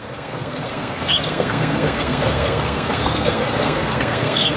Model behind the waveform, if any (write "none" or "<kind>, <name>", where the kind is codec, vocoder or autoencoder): codec, SNAC